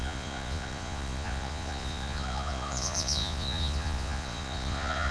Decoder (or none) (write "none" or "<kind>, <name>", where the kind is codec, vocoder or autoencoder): vocoder, Vocos